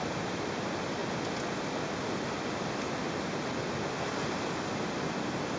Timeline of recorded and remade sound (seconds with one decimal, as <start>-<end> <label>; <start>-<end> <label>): 0.0-5.6 recorded